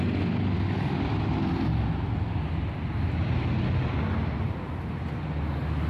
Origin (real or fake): real